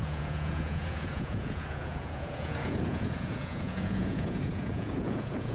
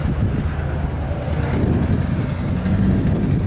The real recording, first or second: second